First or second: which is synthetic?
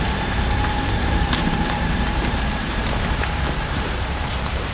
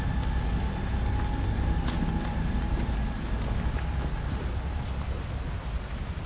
first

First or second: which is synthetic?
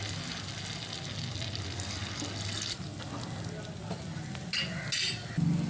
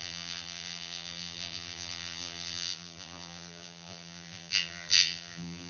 second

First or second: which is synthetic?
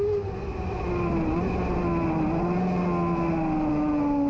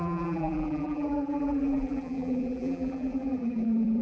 second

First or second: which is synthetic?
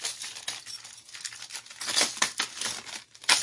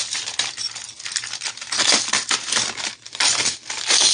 second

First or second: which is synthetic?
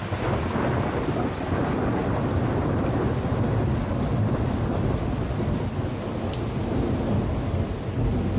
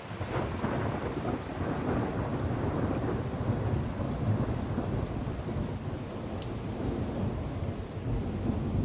second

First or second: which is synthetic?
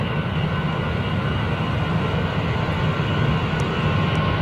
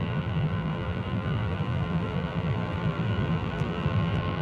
second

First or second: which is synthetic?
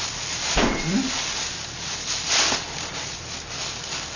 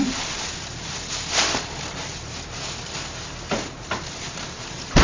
second